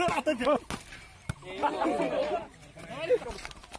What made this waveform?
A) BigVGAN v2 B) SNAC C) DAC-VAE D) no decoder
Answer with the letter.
D